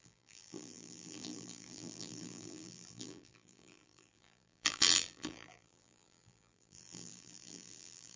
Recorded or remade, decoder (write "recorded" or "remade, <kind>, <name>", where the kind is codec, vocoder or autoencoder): remade, vocoder, BigVGAN v2